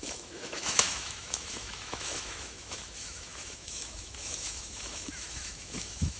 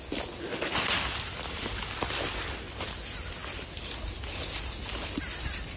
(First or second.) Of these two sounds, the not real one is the first